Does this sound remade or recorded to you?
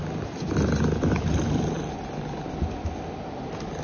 recorded